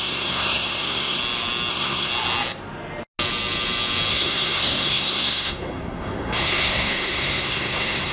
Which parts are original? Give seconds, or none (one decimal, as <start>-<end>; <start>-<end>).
1.2-1.7; 2.1-4.1